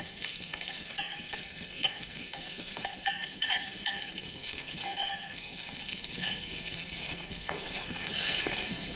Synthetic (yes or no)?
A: yes